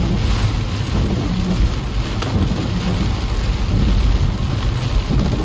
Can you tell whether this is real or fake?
real